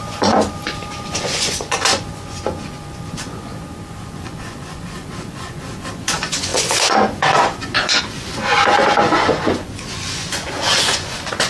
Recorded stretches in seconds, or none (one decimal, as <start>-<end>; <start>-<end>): none